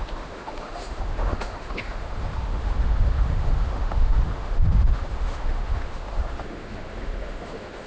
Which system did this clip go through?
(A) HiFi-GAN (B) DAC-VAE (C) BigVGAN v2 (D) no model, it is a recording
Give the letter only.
B